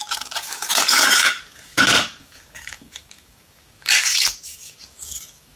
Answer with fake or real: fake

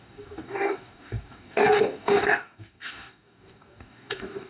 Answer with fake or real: fake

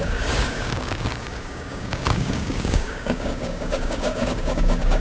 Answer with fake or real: fake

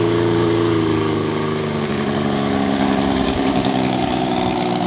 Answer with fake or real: fake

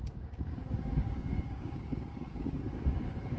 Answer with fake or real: fake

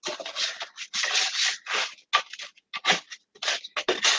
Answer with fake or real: real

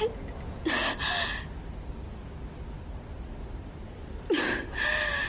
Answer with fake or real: real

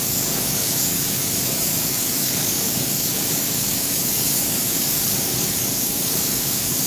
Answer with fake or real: fake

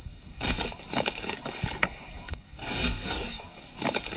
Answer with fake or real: fake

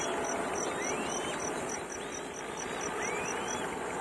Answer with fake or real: real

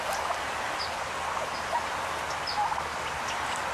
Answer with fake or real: real